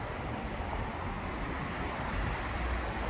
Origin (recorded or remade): remade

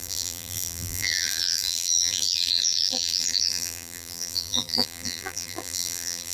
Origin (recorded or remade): remade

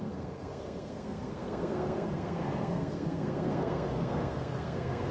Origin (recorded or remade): remade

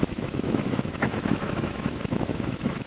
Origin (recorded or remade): remade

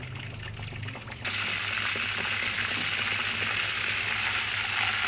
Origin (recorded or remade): recorded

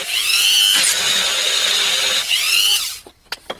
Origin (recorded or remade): recorded